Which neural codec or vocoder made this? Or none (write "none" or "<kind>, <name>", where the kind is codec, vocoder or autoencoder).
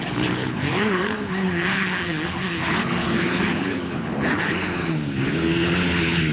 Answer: codec, HILCodec